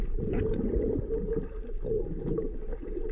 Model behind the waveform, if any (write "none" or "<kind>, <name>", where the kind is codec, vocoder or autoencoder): none